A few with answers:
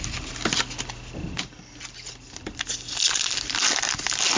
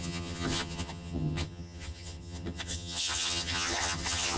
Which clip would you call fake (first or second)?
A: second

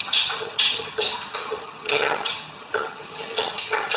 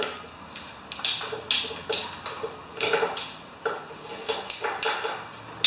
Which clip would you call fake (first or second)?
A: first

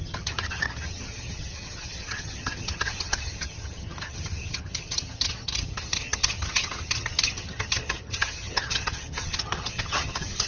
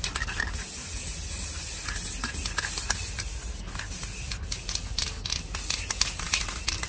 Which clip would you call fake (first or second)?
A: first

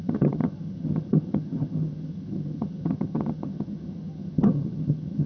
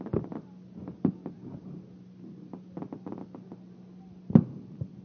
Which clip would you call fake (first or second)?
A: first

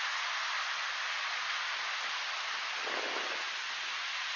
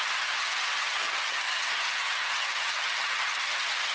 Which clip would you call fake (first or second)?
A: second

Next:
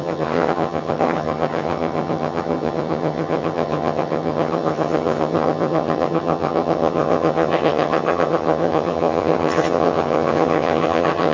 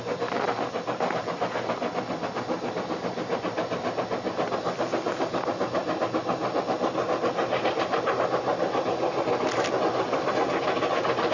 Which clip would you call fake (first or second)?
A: first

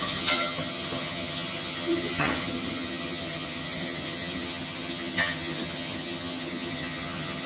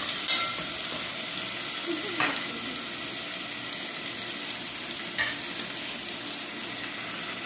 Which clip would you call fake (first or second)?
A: first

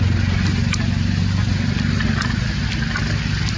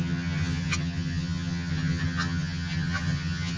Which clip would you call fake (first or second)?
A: second